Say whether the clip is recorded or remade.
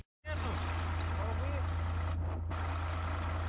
recorded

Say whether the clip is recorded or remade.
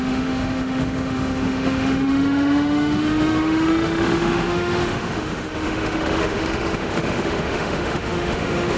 remade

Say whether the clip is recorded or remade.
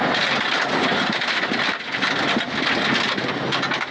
recorded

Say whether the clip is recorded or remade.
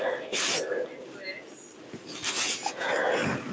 recorded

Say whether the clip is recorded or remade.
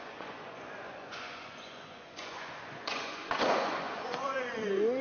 remade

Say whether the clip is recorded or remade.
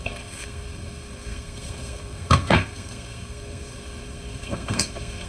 remade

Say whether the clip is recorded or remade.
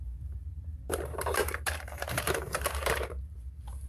remade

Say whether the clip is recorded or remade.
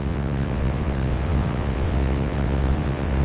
remade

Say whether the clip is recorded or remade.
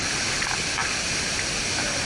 recorded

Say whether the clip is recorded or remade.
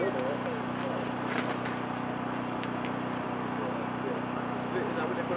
recorded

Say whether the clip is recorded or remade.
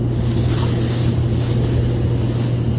recorded